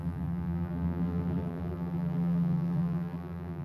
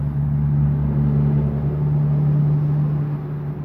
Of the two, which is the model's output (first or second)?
first